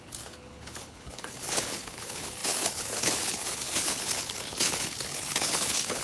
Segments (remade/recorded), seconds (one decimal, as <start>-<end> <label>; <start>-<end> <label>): 0.0-6.0 remade